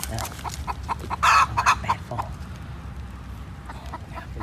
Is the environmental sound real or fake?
real